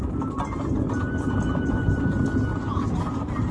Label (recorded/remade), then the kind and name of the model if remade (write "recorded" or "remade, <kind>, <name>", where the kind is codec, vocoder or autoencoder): recorded